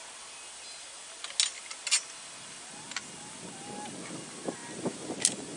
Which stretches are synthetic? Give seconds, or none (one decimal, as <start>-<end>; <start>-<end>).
none